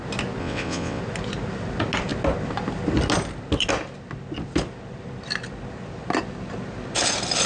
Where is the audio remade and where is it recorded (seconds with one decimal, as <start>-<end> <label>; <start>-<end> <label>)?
0.0-0.4 recorded; 0.4-1.0 remade; 1.0-7.5 recorded